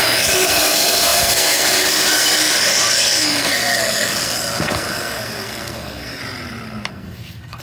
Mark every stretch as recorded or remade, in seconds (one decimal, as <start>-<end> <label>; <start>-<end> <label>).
0.0-6.2 remade; 6.2-6.9 recorded; 6.9-7.6 remade